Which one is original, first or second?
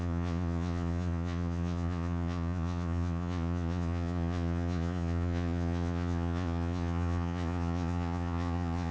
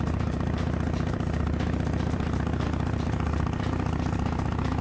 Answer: second